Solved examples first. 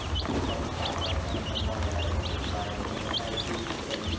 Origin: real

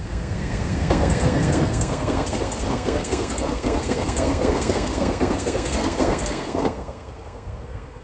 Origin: fake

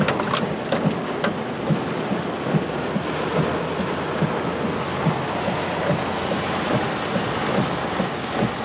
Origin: real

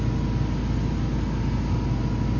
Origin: real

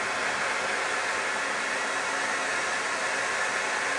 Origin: real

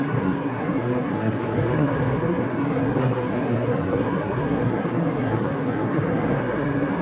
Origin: fake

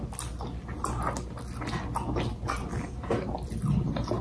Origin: real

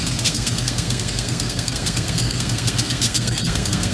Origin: fake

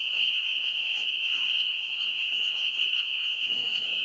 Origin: fake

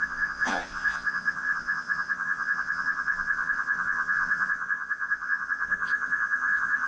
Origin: fake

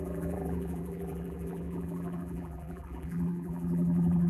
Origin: fake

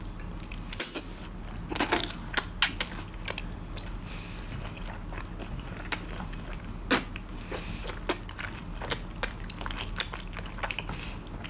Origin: real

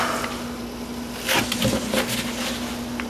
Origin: real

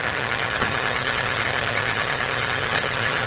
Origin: fake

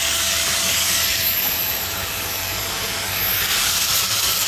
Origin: fake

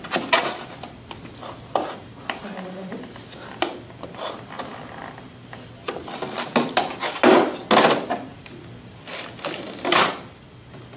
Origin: real